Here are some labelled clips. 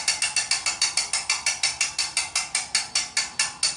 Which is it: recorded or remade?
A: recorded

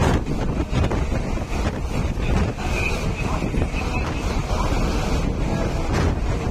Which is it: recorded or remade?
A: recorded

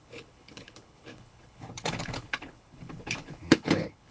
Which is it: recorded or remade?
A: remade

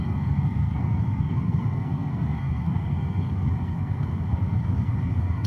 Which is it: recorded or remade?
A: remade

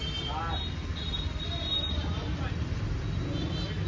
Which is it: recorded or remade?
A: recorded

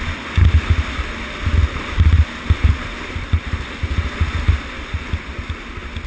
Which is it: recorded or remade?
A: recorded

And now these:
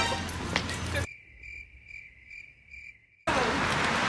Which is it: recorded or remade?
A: recorded